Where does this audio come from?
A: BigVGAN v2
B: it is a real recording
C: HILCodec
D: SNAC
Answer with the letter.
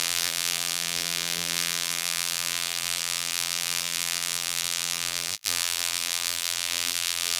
A